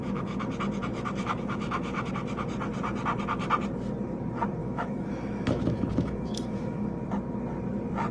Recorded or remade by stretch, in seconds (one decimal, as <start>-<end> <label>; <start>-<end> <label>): 0.0-0.9 recorded; 0.9-2.1 remade; 2.1-4.6 recorded; 4.6-6.9 remade; 6.9-8.1 recorded